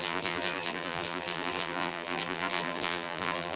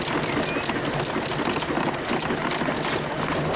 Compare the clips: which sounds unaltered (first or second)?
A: second